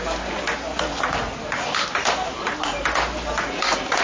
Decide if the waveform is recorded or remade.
recorded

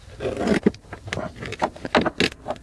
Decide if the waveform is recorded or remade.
recorded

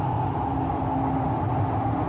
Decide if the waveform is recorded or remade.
recorded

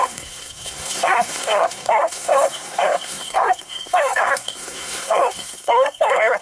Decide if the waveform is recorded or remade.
remade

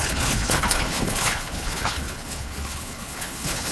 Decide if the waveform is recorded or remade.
remade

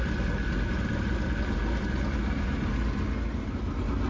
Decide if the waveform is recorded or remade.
recorded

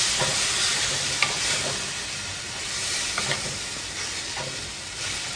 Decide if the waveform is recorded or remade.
recorded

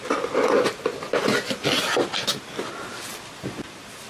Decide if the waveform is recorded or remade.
recorded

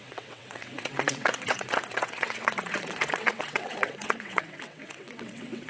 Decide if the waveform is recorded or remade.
remade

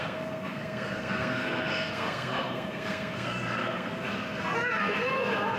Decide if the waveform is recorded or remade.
remade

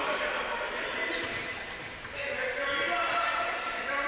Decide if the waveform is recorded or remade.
recorded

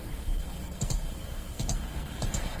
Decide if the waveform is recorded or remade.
remade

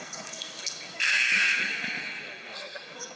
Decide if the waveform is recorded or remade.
remade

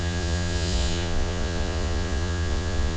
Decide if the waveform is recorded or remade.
remade